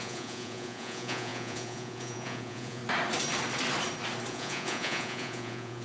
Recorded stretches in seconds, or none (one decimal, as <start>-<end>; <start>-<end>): 2.8-4.3